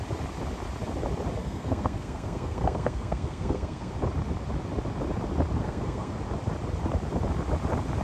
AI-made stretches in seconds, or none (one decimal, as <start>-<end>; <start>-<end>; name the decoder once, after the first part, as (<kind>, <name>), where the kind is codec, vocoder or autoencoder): 1.4-3.9 (codec, SNAC); 5.6-6.1